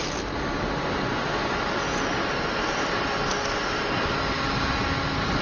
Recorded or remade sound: recorded